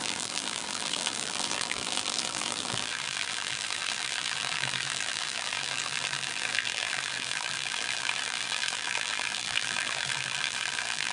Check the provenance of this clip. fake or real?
fake